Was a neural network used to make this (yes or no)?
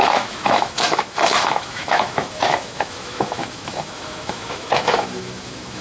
yes